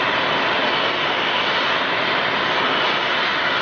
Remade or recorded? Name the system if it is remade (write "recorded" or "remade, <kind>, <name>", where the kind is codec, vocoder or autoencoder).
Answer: recorded